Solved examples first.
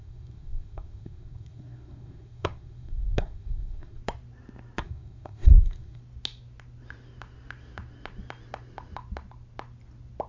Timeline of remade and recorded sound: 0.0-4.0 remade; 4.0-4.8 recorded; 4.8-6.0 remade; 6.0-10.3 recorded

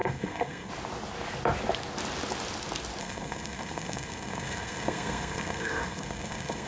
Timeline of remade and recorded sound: 0.0-0.7 remade; 0.7-3.0 recorded; 3.0-6.7 remade

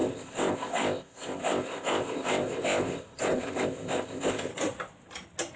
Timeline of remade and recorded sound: 0.0-4.5 remade; 4.5-5.6 recorded

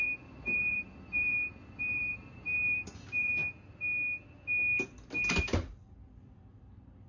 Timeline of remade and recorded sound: 0.0-3.4 remade; 3.4-5.4 recorded; 5.4-7.1 remade

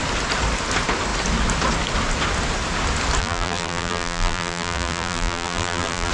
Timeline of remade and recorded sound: 0.0-3.2 recorded; 3.2-6.1 remade

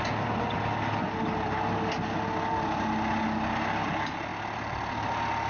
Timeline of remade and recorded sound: 0.0-5.5 recorded

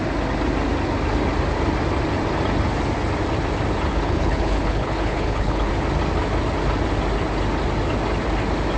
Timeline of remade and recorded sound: 0.0-3.9 recorded; 3.9-5.7 remade; 5.7-8.8 recorded